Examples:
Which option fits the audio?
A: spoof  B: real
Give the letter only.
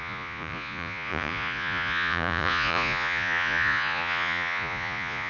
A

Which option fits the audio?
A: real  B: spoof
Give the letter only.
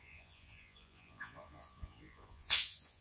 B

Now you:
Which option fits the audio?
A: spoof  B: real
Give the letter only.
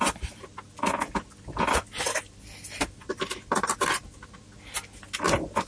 B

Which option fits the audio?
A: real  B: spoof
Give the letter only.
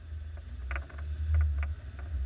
A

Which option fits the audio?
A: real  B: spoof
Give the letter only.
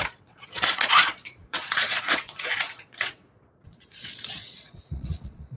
B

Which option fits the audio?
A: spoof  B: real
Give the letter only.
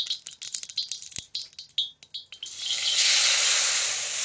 B